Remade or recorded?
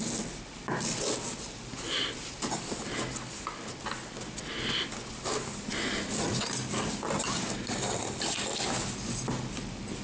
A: recorded